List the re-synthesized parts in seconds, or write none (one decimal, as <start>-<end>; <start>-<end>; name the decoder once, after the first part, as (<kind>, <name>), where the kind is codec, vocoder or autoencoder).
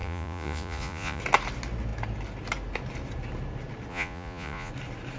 0.0-1.2 (vocoder, Vocos); 3.9-4.7